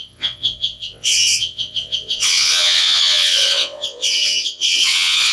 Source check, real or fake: fake